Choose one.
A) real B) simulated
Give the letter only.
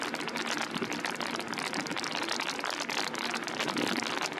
A